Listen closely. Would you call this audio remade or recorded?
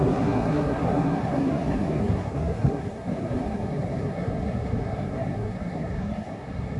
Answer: remade